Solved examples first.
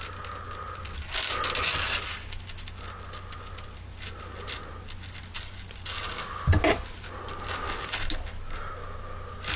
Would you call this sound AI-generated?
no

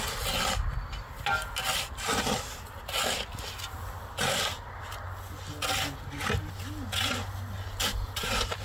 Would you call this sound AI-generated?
no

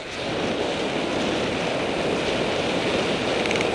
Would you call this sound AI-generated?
no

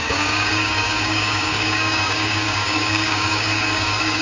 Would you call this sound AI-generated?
yes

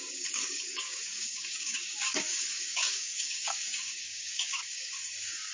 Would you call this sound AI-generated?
yes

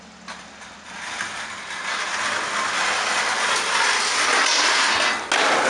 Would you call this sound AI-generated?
no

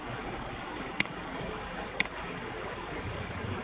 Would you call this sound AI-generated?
yes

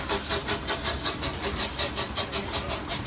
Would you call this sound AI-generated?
no